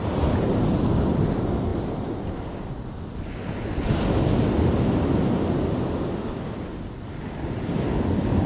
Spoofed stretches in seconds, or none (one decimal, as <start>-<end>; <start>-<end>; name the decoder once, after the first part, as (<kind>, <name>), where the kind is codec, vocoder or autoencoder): none